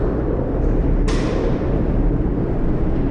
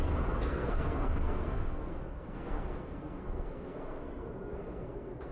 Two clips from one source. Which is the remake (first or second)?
second